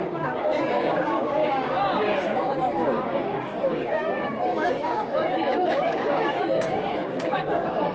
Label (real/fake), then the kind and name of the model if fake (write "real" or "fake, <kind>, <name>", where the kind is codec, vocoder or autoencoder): fake, codec, DAC